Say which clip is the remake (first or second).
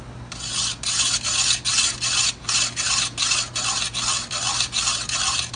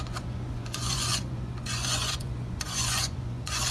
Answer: second